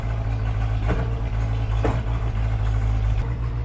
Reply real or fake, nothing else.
real